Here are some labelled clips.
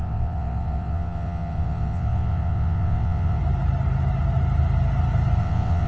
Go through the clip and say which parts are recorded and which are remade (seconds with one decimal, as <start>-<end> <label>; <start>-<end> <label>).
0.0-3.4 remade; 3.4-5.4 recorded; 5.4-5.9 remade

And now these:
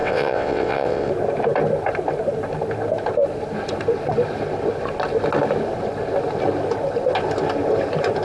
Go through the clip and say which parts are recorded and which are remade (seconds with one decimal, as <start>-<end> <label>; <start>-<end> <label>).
0.0-1.1 remade; 1.1-8.2 recorded

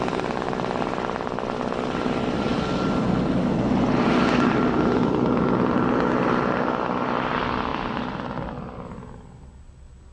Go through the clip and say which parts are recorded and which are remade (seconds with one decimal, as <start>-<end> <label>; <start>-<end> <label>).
0.0-10.1 recorded